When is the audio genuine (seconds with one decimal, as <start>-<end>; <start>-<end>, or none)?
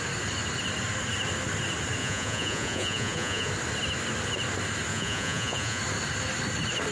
0.0-2.0; 3.5-4.9; 5.8-6.9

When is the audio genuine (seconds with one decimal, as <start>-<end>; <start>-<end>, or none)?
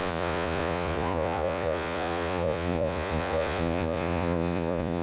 none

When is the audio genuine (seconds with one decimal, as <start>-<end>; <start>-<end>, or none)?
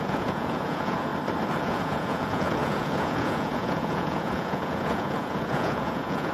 1.1-1.6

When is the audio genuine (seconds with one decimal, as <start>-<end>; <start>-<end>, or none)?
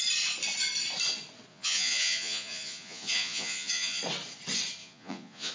0.0-1.5; 4.0-4.8